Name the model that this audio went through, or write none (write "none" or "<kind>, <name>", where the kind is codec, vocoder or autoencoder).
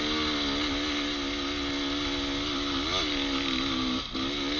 none